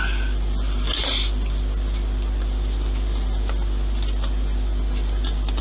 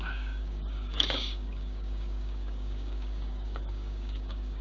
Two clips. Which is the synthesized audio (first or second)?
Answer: second